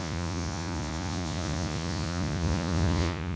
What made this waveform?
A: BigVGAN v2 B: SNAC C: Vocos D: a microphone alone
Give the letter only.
C